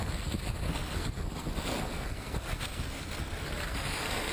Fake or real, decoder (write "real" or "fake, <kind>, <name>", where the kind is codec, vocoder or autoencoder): fake, codec, SNAC